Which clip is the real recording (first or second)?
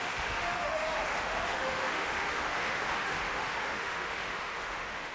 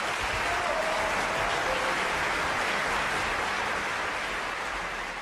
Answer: second